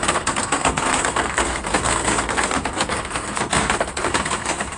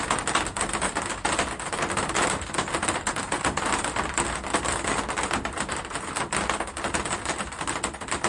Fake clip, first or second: first